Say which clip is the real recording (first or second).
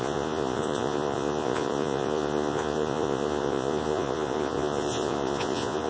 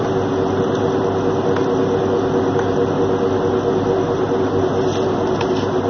second